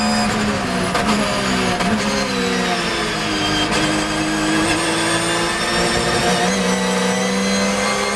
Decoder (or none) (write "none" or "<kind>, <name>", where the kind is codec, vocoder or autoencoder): none